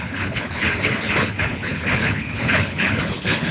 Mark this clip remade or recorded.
remade